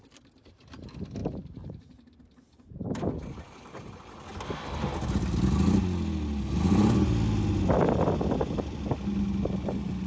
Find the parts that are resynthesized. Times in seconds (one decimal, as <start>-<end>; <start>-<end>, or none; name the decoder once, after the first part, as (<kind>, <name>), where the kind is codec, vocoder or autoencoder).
1.2-2.9 (vocoder, BigVGAN v2)